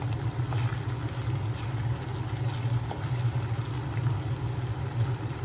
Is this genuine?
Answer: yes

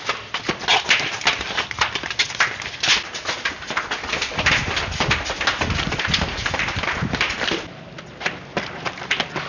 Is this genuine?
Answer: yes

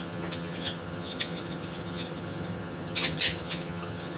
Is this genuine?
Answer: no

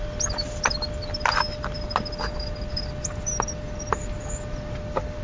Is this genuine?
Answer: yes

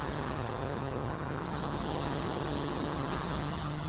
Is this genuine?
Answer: no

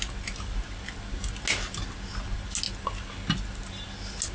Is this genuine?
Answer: yes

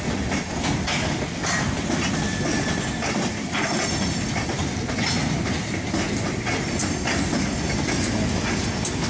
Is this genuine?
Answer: yes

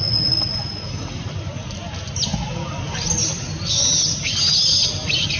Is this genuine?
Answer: yes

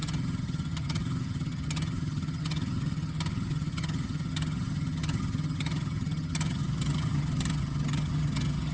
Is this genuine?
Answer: no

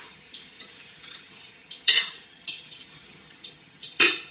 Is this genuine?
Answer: no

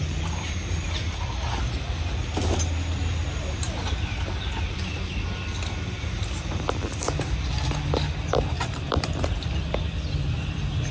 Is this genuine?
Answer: yes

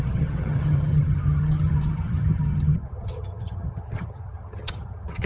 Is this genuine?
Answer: no